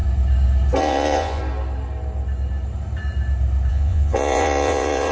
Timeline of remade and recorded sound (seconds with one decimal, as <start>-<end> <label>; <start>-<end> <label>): 0.0-0.8 recorded; 0.8-1.4 remade; 1.4-3.7 recorded; 3.7-5.1 remade